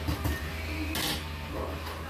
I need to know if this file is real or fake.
real